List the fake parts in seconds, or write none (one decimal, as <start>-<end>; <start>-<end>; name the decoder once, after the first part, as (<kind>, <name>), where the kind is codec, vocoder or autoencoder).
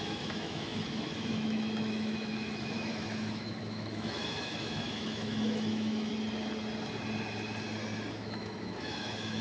0.0-6.1 (autoencoder, DAC-VAE); 8.1-9.4